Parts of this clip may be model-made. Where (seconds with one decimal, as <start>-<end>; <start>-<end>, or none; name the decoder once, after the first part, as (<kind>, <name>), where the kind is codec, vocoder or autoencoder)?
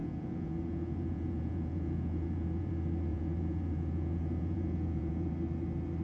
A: 0.0-2.7 (vocoder, Vocos); 3.1-5.3